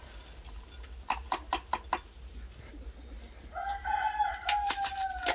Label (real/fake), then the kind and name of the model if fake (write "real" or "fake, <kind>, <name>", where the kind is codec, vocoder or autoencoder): real